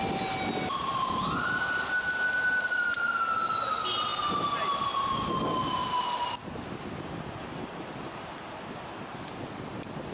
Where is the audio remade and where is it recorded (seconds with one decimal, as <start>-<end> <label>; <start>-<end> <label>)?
0.0-10.1 recorded